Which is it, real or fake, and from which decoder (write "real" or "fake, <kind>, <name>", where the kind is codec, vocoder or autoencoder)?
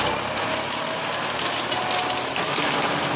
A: real